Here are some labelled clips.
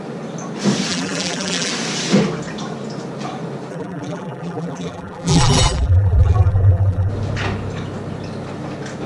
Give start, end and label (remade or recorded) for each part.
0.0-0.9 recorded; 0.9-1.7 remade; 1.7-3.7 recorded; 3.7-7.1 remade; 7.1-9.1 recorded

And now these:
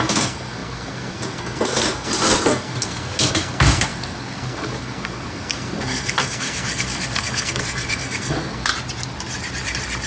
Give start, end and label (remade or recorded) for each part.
0.0-8.7 remade; 8.7-10.1 recorded

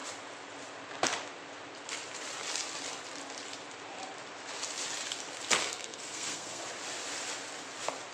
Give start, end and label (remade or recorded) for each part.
0.0-5.6 recorded; 5.6-6.6 remade; 6.6-8.1 recorded

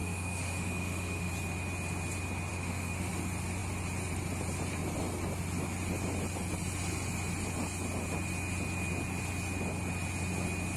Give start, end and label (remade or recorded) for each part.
0.0-1.3 remade; 1.3-2.5 recorded; 2.5-3.1 remade; 3.1-10.8 recorded

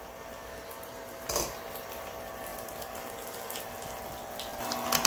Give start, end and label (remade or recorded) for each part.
0.0-5.1 recorded

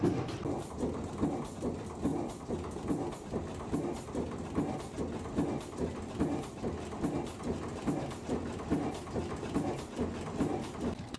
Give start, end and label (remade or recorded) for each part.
0.0-11.2 recorded

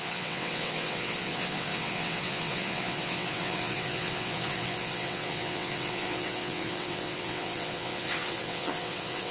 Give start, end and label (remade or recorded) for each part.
0.0-9.3 remade

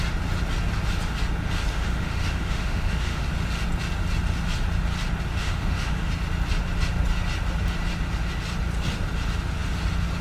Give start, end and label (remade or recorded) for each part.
0.0-1.7 recorded; 1.7-3.3 remade; 3.3-5.4 recorded; 5.4-6.1 remade; 6.1-10.2 recorded